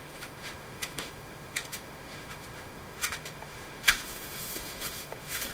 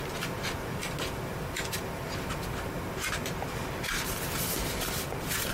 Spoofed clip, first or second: first